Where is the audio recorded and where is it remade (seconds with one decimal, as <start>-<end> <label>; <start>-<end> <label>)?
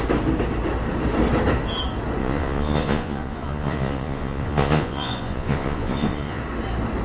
0.0-2.2 recorded; 2.2-6.4 remade; 6.4-7.0 recorded